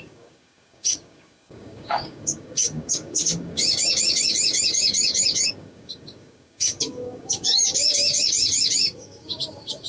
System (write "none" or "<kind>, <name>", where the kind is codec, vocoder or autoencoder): codec, DAC